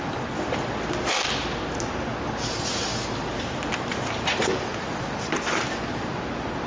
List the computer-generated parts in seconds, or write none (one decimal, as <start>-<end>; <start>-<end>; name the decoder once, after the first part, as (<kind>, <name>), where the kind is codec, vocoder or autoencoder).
none